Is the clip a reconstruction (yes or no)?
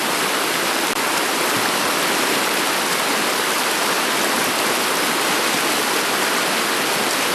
no